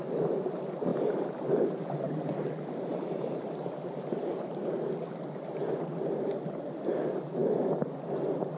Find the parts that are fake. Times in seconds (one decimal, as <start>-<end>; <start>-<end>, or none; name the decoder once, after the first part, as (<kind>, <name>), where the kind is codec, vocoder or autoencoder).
0.9-2.5 (vocoder, BigVGAN v2); 2.9-4.4